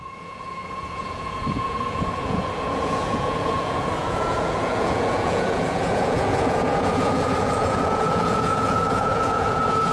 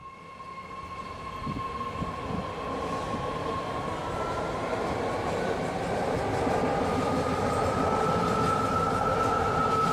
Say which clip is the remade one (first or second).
first